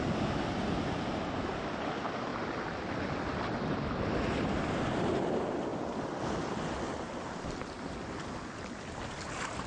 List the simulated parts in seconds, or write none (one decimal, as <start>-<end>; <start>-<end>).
none